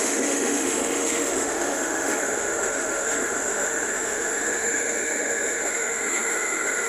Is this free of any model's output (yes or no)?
no